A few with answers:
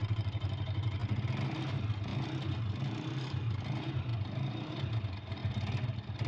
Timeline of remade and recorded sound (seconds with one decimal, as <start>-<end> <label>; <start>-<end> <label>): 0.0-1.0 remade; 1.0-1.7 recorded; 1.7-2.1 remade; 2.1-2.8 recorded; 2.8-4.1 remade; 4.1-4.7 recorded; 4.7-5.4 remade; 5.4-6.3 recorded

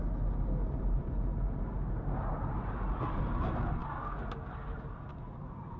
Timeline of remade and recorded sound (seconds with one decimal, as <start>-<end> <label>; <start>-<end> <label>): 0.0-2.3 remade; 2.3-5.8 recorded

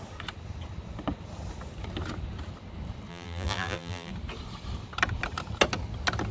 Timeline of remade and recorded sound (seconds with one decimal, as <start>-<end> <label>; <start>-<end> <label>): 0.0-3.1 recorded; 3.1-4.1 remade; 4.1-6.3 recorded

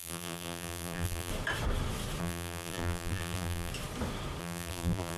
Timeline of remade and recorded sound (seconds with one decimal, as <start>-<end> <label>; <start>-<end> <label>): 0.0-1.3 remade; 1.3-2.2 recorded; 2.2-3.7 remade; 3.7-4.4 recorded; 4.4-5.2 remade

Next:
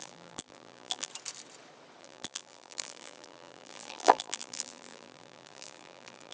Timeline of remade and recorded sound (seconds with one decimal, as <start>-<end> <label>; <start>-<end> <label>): 0.0-1.1 remade; 1.1-2.0 recorded; 2.0-6.3 remade